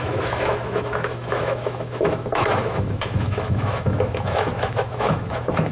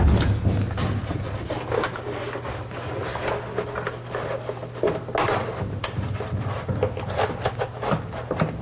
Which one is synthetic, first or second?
first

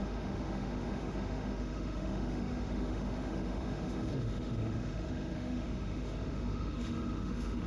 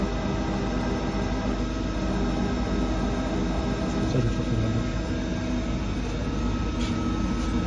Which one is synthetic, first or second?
first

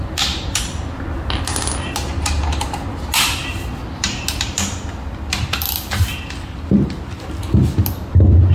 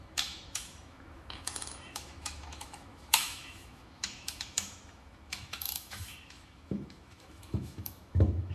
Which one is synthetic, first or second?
second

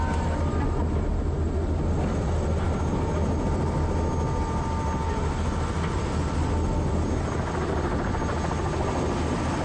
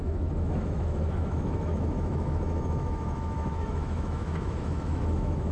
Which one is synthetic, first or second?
second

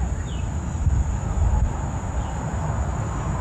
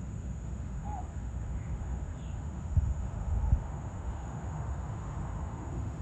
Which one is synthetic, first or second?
second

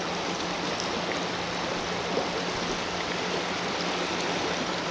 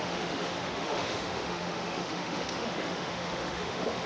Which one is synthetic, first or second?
second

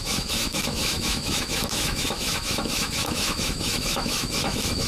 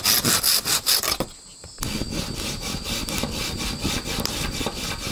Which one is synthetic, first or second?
first